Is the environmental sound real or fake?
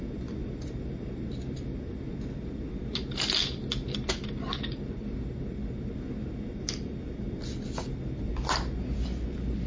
real